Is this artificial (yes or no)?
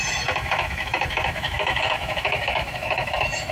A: yes